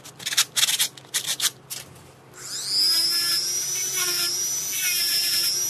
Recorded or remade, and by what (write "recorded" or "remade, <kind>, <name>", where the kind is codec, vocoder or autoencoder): recorded